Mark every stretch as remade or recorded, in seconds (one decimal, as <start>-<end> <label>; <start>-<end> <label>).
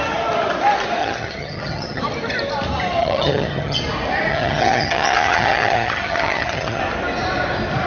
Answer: 0.0-1.0 recorded; 1.0-2.0 remade; 2.0-3.0 recorded; 3.0-3.8 remade; 3.8-4.3 recorded; 4.3-6.8 remade; 6.8-7.9 recorded